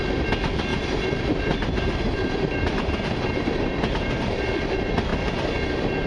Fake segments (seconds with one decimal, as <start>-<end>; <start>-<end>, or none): 0.7-4.4